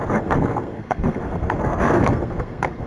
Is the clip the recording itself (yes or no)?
no